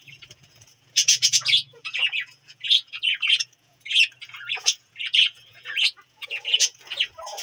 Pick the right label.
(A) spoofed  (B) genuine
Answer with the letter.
A